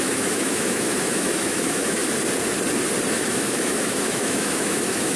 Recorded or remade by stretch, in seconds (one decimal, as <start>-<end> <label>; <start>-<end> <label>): 0.0-2.0 remade; 2.0-3.1 recorded; 3.1-5.2 remade